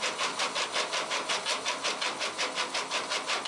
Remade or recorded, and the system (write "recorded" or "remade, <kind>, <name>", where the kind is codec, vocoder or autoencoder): recorded